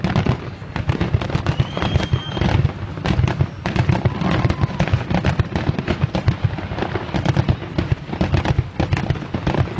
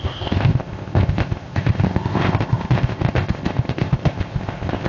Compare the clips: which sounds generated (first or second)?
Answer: second